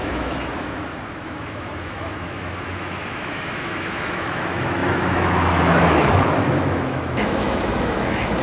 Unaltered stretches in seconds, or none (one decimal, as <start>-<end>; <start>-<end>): none